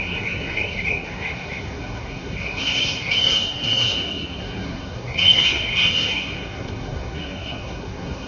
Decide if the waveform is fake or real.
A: fake